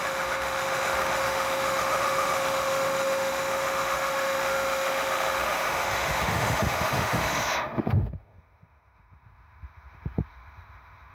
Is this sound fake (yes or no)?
yes